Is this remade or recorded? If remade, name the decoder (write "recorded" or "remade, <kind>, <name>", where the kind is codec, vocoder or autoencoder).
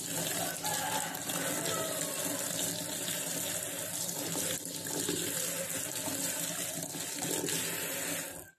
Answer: recorded